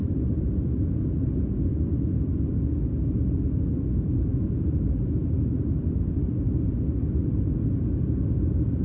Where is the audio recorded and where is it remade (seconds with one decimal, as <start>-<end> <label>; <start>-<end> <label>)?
0.0-8.8 recorded